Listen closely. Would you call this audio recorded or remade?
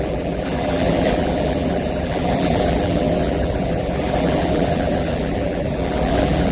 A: remade